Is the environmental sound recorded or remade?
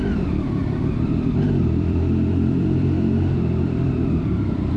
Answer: remade